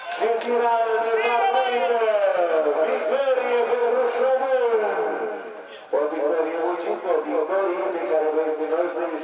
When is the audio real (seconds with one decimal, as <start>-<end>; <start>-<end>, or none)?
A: 0.0-9.2